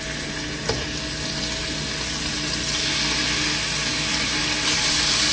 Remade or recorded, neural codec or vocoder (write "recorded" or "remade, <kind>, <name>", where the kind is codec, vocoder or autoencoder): recorded